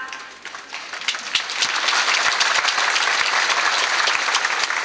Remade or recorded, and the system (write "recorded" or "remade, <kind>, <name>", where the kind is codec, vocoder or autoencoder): recorded